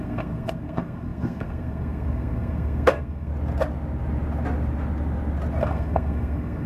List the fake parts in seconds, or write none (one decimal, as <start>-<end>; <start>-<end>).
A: 0.0-3.3; 5.6-6.7